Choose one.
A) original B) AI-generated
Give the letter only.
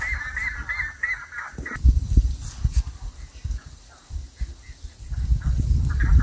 A